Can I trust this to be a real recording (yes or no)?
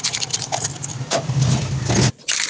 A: yes